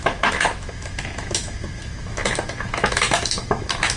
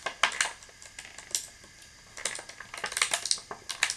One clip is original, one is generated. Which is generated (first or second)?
first